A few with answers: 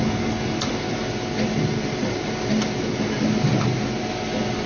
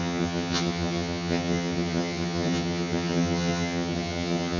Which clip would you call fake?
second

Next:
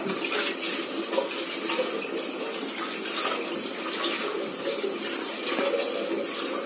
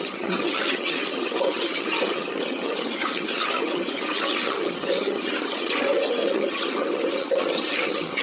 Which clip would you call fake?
second